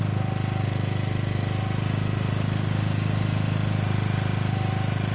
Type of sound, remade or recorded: recorded